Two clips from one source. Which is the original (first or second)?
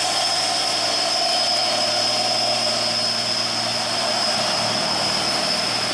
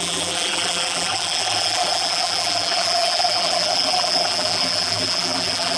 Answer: first